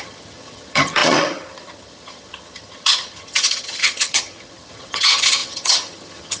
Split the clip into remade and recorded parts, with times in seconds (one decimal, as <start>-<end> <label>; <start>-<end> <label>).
0.0-6.4 remade